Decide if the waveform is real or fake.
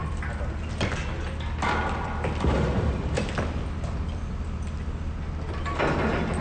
real